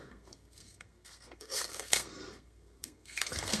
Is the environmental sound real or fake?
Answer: fake